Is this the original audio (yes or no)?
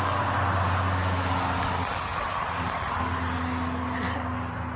yes